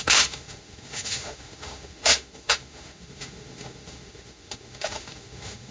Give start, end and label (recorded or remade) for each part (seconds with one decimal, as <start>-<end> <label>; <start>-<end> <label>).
0.0-5.7 remade